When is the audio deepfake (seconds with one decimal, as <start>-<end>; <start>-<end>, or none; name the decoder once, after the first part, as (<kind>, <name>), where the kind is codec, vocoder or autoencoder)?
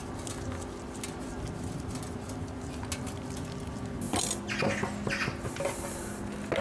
none